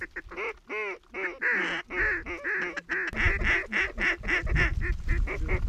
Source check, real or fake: real